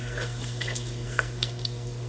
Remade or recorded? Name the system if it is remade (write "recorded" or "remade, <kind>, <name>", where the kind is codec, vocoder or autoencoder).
remade, codec, SNAC